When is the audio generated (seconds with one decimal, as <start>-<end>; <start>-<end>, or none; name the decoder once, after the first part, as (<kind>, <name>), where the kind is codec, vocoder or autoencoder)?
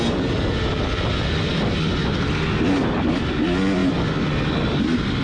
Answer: none